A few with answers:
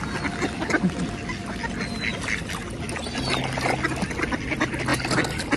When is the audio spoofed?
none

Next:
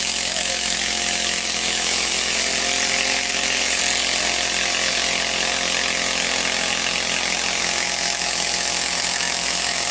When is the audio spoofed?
0.0-2.5 (autoencoder, DAC-VAE); 3.1-3.8; 7.6-9.9

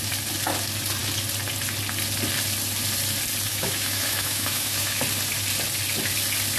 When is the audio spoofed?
3.5-5.0 (autoencoder, DAC-VAE)

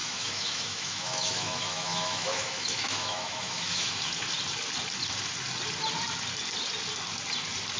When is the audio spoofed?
0.0-4.0 (autoencoder, DAC-VAE)